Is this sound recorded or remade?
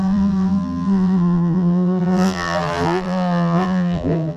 remade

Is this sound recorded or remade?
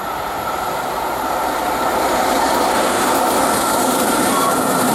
remade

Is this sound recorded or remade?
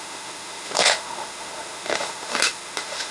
remade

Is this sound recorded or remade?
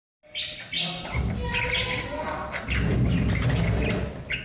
recorded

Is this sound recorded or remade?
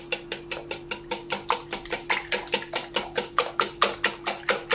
recorded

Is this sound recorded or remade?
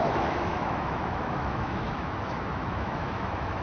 remade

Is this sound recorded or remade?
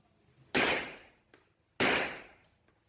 recorded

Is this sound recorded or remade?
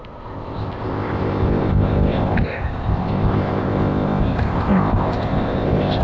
remade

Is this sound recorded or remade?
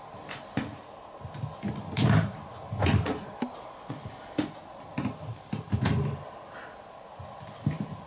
recorded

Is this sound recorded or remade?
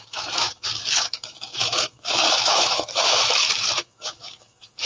remade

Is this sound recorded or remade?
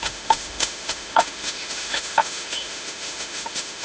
remade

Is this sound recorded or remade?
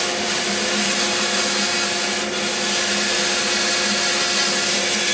recorded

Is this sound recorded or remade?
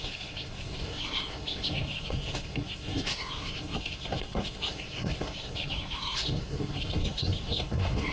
remade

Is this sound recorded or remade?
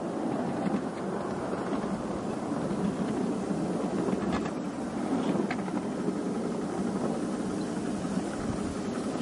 recorded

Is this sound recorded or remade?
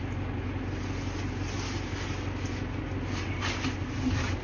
recorded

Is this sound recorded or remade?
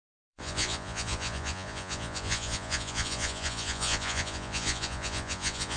remade